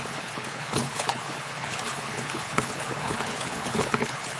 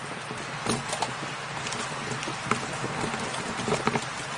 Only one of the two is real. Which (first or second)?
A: second